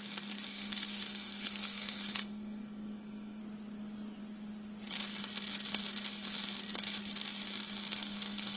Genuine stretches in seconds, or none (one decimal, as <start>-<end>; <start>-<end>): 0.0-0.5; 3.4-8.0